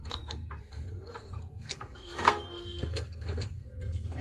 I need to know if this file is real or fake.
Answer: fake